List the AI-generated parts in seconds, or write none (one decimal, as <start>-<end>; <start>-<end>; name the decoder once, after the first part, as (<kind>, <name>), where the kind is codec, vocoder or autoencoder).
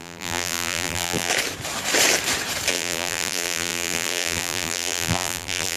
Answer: 0.0-1.3 (vocoder, BigVGAN v2); 2.7-5.8